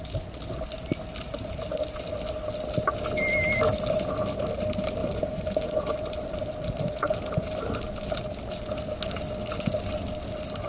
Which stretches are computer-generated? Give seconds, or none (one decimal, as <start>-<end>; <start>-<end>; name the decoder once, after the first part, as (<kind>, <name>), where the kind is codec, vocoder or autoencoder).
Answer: 5.0-8.2 (vocoder, BigVGAN v2)